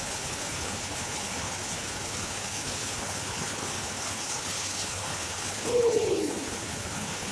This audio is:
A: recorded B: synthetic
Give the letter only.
B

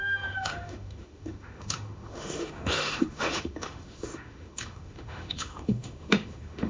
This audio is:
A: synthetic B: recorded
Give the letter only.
A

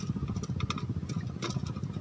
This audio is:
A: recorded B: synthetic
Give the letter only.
A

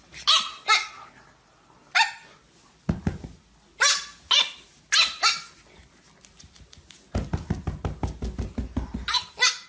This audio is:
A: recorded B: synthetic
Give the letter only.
A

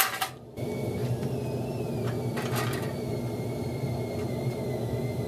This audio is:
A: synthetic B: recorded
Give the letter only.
B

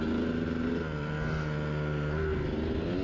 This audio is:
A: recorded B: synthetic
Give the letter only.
A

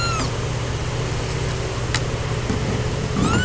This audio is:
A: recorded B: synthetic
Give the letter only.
A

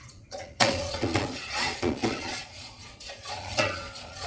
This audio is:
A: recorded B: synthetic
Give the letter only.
B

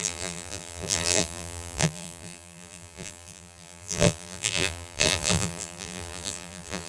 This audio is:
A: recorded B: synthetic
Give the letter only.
B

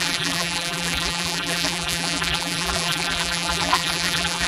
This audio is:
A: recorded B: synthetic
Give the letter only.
B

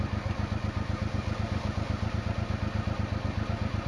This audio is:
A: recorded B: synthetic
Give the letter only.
A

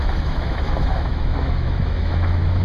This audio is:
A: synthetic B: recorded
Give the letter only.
A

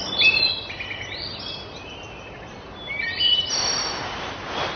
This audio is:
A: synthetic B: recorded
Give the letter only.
B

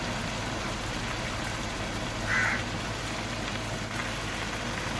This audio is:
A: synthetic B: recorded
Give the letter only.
B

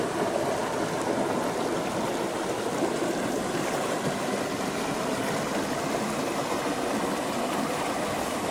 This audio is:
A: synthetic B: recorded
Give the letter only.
B